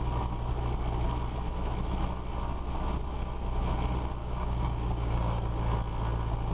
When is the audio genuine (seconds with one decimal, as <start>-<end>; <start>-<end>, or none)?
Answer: 0.0-4.2; 5.5-6.5